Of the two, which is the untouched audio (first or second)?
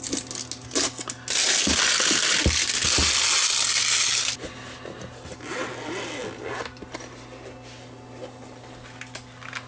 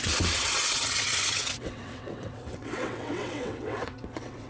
first